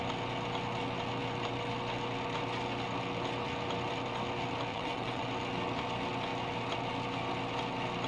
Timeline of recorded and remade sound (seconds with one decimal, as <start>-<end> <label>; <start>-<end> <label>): 0.0-4.7 recorded; 4.7-5.3 remade; 5.3-8.1 recorded